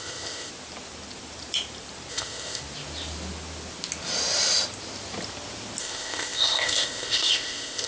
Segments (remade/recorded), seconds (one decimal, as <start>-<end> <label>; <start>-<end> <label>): 0.0-0.5 remade; 0.5-2.1 recorded; 2.1-2.6 remade; 2.6-5.8 recorded; 5.8-7.9 remade